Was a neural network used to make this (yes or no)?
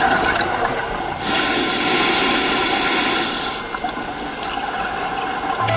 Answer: no